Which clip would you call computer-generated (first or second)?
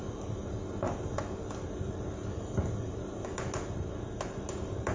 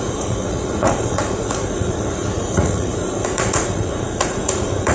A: second